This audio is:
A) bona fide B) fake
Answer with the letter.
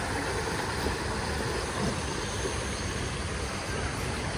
A